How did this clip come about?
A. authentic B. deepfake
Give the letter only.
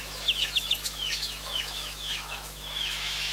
B